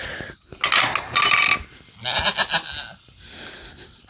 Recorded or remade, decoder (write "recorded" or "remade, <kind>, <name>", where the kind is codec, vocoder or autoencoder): recorded